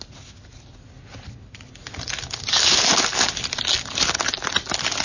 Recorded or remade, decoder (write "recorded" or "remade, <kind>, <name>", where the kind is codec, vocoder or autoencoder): recorded